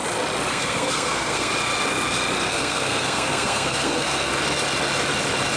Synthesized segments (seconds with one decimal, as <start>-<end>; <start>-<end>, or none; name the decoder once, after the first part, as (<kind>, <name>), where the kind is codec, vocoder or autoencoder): 0.5-1.5 (codec, SNAC); 2.5-4.3